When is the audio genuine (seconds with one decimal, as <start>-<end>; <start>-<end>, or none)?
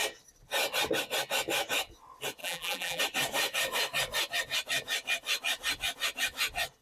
0.0-2.4; 3.0-6.8